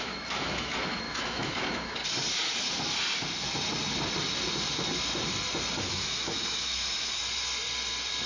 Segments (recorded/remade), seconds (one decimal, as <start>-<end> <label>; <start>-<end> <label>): 0.0-2.0 remade; 2.0-5.8 recorded; 5.8-7.2 remade; 7.2-8.3 recorded